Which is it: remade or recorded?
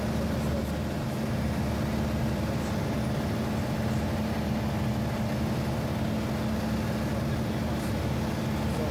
recorded